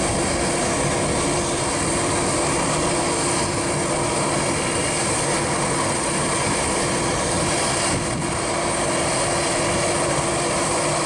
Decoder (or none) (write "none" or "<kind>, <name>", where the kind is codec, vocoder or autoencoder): none